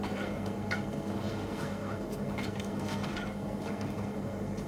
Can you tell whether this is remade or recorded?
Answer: remade